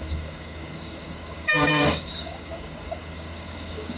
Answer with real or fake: fake